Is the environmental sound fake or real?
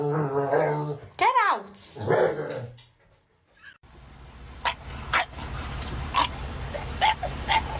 real